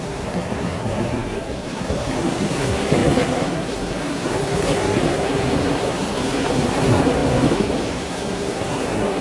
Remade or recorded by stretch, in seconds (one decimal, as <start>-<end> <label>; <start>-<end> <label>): 0.0-9.2 remade